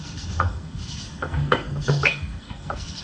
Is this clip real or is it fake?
fake